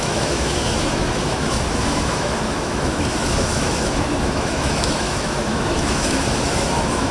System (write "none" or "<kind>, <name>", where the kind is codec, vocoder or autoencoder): autoencoder, DAC-VAE